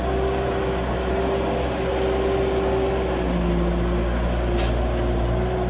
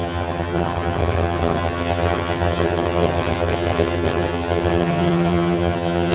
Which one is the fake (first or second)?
second